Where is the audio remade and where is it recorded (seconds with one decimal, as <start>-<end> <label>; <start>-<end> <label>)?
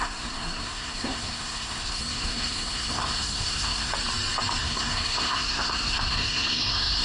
0.0-3.9 remade; 3.9-4.6 recorded; 4.6-7.0 remade